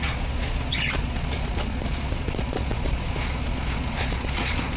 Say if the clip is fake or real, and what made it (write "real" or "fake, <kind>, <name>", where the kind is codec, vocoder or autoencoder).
fake, vocoder, Vocos